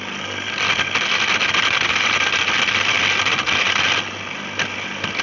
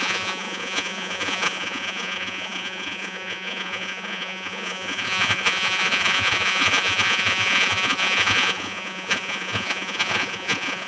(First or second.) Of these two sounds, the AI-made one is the second